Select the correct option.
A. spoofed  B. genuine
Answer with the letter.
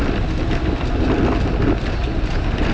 B